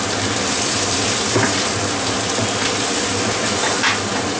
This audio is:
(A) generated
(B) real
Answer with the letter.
A